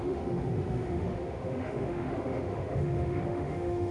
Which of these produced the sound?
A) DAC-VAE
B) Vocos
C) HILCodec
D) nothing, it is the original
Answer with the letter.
A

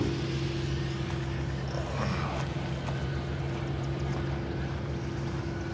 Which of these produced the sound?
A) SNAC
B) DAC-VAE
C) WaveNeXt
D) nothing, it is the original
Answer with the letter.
D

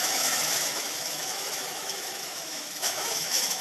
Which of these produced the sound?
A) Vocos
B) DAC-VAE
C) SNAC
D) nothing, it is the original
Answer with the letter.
B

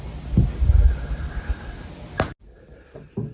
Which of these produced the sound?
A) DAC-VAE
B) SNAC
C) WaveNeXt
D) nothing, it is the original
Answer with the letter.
D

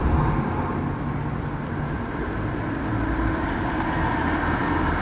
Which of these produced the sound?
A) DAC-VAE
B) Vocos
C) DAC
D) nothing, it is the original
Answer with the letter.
D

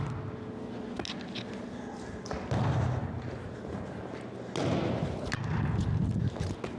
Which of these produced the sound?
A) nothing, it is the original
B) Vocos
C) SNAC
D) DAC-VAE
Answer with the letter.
A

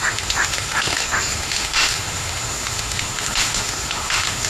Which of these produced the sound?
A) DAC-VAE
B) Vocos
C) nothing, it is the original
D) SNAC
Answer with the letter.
A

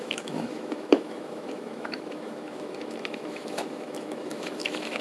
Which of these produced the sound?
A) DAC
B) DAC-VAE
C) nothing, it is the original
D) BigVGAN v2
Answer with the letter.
B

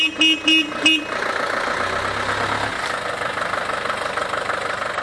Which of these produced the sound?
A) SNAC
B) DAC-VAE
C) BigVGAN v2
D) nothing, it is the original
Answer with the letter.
D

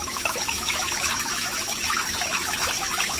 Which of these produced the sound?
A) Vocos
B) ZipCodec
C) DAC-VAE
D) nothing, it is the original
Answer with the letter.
C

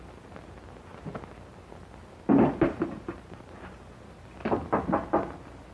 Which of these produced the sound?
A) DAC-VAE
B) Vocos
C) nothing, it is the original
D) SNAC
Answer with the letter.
C